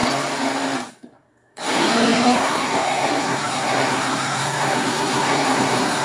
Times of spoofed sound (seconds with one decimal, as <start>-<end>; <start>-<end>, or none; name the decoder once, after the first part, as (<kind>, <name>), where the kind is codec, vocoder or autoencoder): 0.9-6.0 (codec, SNAC)

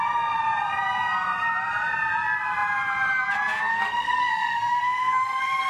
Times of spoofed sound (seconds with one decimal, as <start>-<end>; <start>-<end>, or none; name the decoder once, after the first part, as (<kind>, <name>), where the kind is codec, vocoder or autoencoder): 3.7-5.7 (codec, SNAC)

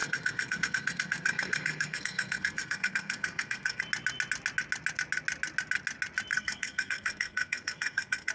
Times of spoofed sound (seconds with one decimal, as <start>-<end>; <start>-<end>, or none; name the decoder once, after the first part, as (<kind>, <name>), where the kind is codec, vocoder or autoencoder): 0.0-3.8 (codec, SNAC); 6.3-8.3

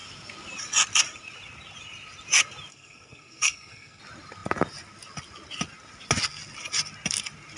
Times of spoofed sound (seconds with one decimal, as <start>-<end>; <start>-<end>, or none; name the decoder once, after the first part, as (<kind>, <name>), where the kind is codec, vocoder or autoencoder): 2.7-4.0 (codec, SNAC)

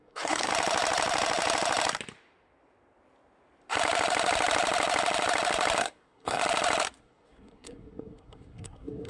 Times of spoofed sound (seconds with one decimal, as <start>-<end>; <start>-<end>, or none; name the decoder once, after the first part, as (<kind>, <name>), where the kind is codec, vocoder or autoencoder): 0.0-0.5 (codec, SNAC); 5.8-6.4; 7.0-9.1

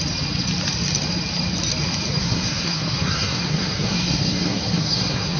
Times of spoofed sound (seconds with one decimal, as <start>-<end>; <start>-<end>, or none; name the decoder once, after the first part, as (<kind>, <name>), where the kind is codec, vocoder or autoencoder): 2.2-5.4 (codec, SNAC)

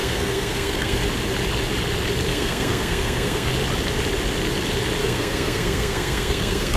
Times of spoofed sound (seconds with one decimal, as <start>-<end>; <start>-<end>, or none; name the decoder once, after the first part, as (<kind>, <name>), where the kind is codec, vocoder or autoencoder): 0.0-1.0 (codec, SNAC); 2.3-3.5; 5.0-6.8